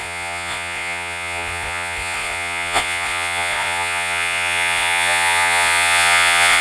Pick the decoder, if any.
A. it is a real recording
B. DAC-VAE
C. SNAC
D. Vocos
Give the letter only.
D